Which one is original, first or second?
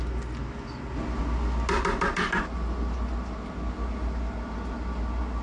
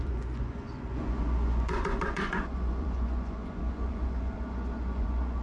first